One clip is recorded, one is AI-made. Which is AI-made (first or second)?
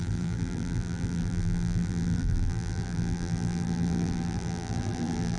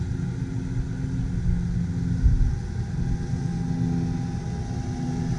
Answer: first